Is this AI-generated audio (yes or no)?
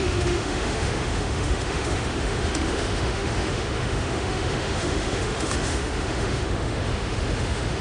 yes